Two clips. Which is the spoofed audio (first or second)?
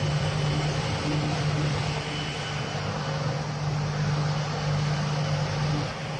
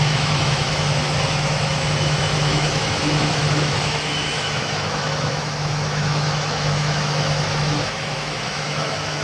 second